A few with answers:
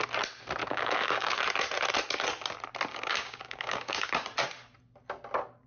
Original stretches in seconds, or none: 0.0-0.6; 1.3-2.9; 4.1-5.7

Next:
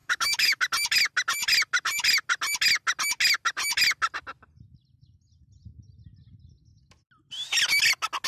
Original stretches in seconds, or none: 0.6-8.3

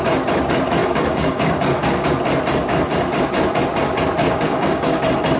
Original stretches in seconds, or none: 0.0-0.8; 2.1-4.2; 5.0-5.4

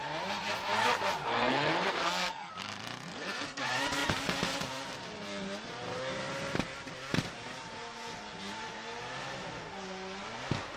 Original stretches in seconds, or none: 0.0-1.3; 2.5-3.1; 3.6-10.8

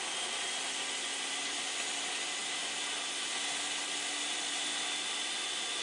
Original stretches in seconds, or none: 0.0-5.8

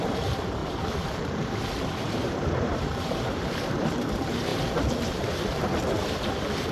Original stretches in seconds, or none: 4.5-5.1